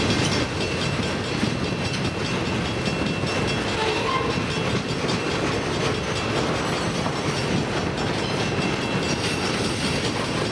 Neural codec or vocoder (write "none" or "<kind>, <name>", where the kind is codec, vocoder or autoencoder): none